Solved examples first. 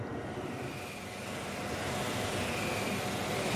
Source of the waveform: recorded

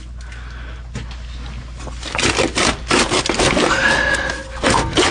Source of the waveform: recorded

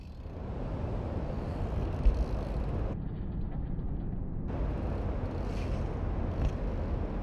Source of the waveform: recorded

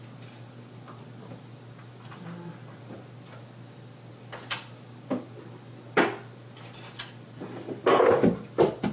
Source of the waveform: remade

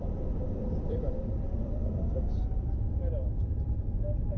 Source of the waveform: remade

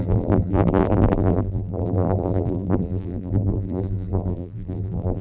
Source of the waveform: remade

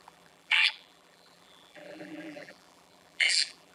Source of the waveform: remade